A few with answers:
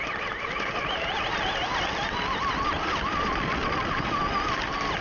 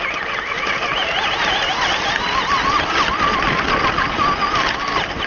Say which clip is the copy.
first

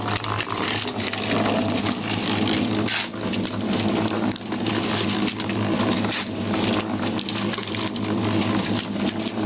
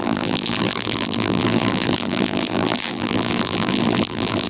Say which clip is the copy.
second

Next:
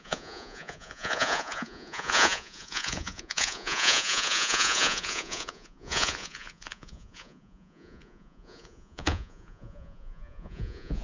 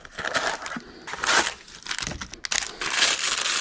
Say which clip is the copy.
first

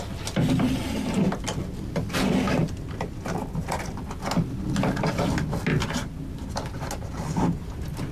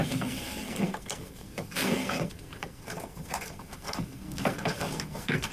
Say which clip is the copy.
second